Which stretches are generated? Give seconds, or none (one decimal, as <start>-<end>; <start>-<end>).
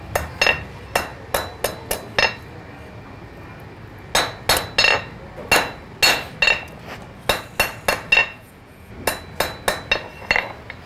8.2-8.9